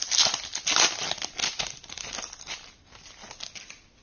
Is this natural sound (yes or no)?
yes